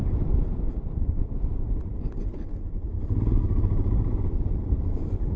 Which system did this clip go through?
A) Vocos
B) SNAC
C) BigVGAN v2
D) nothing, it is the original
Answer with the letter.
D